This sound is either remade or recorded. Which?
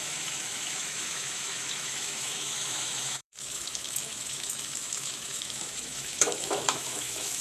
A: remade